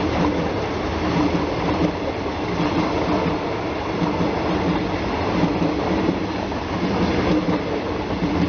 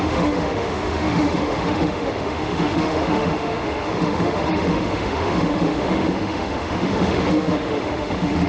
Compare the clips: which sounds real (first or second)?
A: first